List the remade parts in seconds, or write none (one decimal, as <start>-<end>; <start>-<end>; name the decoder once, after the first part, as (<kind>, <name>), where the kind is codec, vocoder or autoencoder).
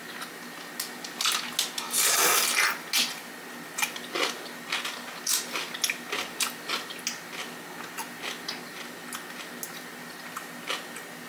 none